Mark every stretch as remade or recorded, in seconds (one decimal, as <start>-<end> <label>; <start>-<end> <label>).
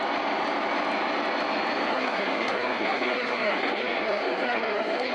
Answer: 0.0-1.9 recorded; 1.9-5.1 remade